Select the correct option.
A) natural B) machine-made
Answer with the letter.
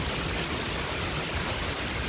A